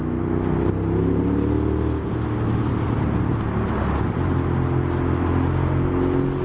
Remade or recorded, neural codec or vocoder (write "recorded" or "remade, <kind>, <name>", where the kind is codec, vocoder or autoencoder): recorded